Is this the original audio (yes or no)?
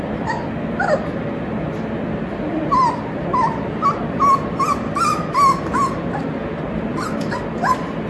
yes